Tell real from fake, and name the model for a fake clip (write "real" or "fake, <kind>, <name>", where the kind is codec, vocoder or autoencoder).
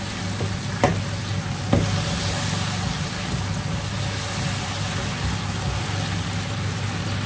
real